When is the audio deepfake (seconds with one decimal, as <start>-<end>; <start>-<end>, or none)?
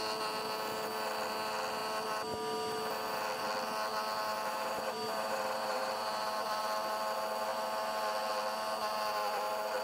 4.3-6.6